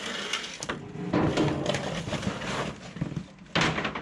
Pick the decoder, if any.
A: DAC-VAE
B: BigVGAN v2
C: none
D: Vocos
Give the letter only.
C